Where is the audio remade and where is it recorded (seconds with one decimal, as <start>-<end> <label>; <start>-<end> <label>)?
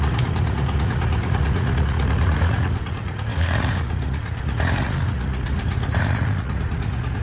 0.0-7.2 remade